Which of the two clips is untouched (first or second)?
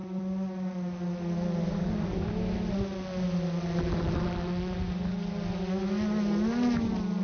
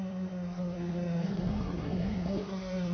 first